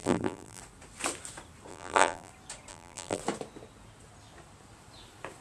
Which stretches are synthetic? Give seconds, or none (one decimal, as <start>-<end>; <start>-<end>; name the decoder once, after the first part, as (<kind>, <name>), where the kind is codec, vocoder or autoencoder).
0.0-0.6 (vocoder, BigVGAN v2); 1.7-2.3; 2.7-3.2